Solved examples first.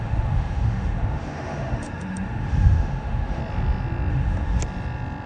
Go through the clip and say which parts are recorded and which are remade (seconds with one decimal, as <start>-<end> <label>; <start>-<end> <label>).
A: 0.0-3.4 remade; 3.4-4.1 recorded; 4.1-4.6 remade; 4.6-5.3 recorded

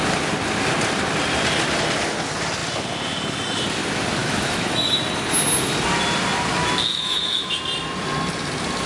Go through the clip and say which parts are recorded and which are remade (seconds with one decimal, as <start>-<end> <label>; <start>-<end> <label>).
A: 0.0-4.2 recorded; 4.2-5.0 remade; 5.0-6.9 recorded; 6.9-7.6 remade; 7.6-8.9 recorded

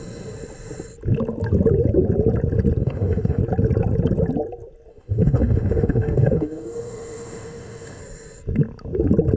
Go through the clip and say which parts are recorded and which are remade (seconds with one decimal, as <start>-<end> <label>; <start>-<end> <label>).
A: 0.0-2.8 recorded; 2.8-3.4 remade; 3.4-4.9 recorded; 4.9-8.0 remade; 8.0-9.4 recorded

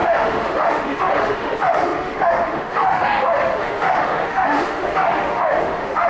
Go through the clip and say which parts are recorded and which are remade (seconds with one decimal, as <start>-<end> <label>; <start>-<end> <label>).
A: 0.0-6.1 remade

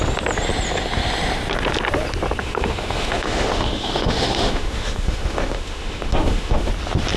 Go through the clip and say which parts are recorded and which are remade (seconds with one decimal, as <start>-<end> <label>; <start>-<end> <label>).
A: 0.0-2.4 recorded; 2.4-6.7 remade; 6.7-7.2 recorded

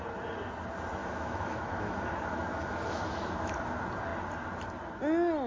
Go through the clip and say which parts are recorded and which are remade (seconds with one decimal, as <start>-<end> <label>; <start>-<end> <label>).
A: 0.0-1.0 recorded; 1.0-3.5 remade; 3.5-5.5 recorded

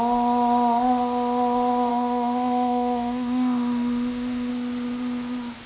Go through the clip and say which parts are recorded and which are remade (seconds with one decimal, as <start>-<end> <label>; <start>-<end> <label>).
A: 0.0-1.9 recorded; 1.9-4.5 remade; 4.5-5.7 recorded